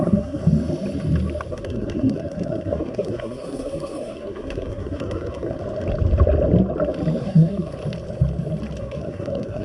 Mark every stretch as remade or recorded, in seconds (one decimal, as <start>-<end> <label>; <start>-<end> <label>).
0.0-0.4 remade; 0.4-1.5 recorded; 1.5-5.6 remade; 5.6-7.2 recorded; 7.2-7.8 remade; 7.8-8.8 recorded; 8.8-9.6 remade